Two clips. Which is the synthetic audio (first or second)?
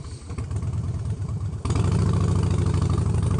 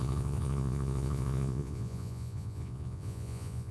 second